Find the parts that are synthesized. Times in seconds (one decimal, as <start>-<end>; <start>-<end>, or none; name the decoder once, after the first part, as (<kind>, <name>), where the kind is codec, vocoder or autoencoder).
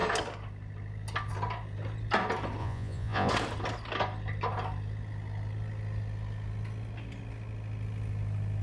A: 2.6-3.3 (vocoder, Vocos)